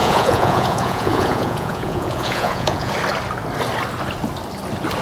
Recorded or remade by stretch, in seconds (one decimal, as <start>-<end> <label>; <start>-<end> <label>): 0.0-2.9 remade; 2.9-5.0 recorded